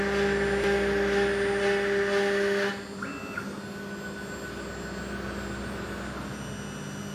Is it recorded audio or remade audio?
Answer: recorded